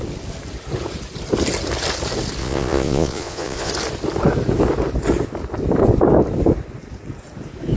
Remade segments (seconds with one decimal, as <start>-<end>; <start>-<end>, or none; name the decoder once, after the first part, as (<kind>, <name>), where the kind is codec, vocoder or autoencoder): 2.4-3.7 (vocoder, Vocos)